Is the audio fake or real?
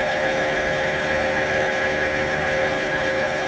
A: fake